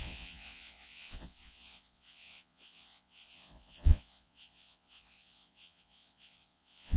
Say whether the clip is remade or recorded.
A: remade